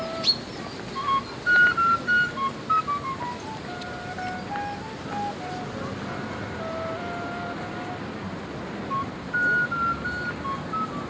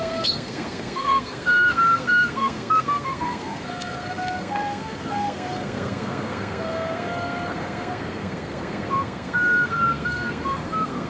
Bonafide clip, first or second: first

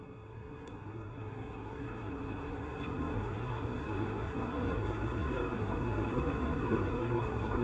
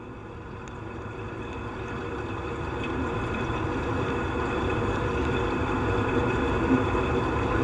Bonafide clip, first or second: second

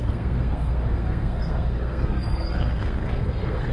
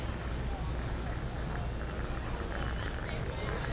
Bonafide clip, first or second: second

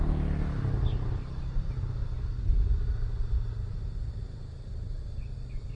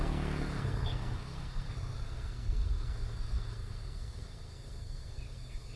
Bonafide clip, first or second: first